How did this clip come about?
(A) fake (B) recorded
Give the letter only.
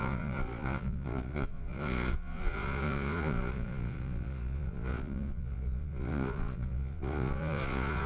A